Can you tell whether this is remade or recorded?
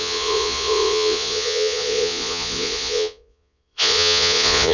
remade